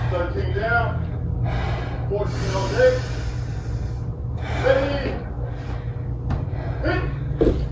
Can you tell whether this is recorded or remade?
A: recorded